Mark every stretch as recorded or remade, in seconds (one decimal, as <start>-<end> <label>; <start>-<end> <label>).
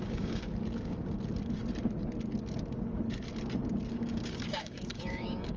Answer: 0.0-0.5 remade; 0.5-3.9 recorded; 3.9-5.6 remade